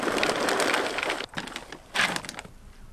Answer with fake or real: real